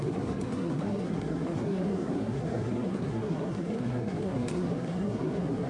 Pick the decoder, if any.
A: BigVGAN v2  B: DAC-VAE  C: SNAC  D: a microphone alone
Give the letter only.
C